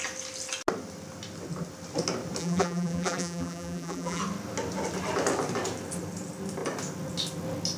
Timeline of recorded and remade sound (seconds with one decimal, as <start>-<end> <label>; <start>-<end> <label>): 0.0-2.4 recorded; 2.4-4.2 remade; 4.2-7.8 recorded